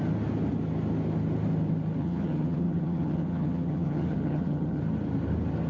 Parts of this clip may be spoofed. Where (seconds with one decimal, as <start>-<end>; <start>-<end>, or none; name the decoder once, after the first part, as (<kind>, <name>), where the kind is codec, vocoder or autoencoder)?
2.0-4.8 (vocoder, HiFi-GAN)